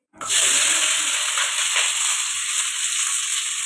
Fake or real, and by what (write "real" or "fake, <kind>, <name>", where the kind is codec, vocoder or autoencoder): real